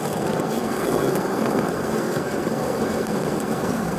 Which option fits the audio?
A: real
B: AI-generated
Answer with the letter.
B